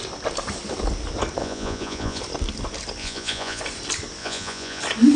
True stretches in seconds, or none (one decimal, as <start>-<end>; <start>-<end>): 0.0-1.4; 2.2-3.0; 3.6-4.2; 4.8-5.2